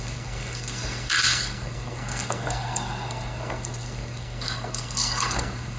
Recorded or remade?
remade